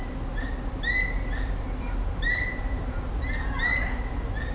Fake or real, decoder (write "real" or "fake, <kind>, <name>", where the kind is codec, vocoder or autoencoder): real